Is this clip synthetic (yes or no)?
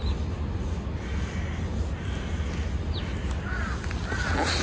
no